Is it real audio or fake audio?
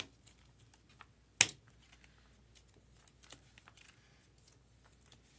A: real